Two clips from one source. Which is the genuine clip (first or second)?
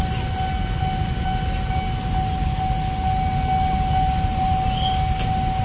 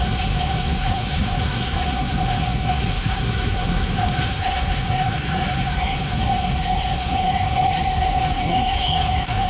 first